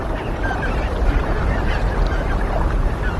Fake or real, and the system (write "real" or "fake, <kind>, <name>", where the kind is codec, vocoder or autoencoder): fake, vocoder, BigVGAN v2